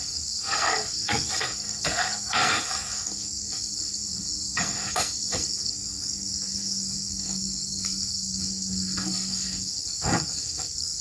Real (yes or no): no